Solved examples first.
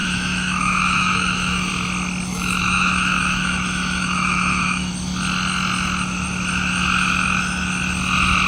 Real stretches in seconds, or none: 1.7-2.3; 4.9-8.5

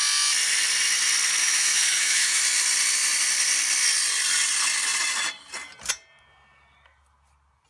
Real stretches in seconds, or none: 0.0-1.4; 2.4-7.7

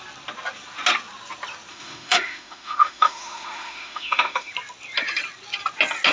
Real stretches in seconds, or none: 0.0-1.7; 4.5-6.1

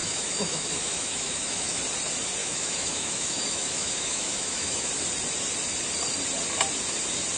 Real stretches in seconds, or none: 1.8-2.4; 4.9-7.4

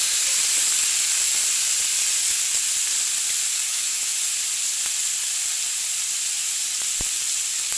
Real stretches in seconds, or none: 0.0-3.7; 4.2-7.8